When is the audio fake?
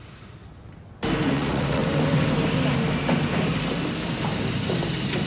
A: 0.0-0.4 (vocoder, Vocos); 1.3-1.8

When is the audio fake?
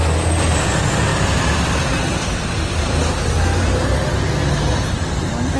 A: 0.6-5.6 (vocoder, BigVGAN v2)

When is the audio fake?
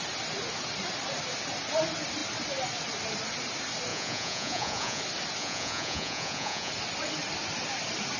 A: 3.9-5.0 (vocoder, Vocos); 5.4-6.7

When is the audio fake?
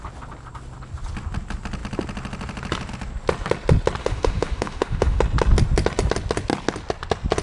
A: 4.0-5.2 (autoencoder, DAC-VAE)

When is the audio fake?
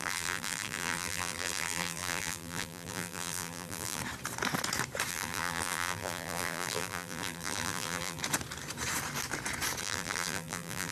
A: 0.0-4.0 (vocoder, BigVGAN v2); 5.1-8.2; 9.8-10.9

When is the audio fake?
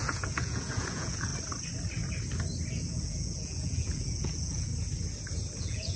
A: 0.0-1.3 (vocoder, Vocos); 2.9-4.7; 5.6-6.0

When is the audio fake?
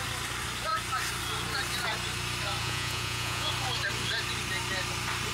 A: 2.6-3.5 (vocoder, Vocos)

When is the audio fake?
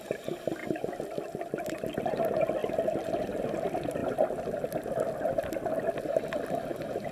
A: 0.0-0.6 (vocoder, BigVGAN v2); 1.3-4.0; 6.2-7.1